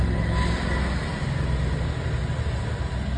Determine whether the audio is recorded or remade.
recorded